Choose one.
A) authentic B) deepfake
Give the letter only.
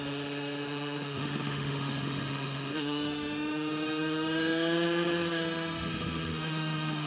B